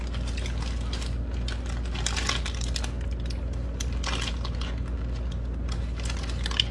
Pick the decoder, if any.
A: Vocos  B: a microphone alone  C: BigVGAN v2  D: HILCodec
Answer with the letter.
B